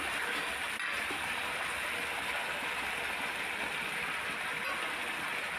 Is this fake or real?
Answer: real